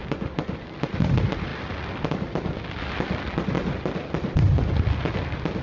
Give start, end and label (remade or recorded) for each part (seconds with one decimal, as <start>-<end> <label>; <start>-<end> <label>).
0.0-5.6 recorded